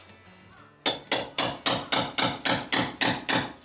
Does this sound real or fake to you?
real